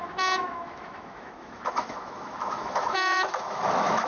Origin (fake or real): fake